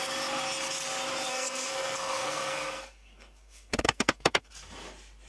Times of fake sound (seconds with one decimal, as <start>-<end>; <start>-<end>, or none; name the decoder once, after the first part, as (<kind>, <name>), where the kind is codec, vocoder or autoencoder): 1.3-4.5 (codec, SNAC)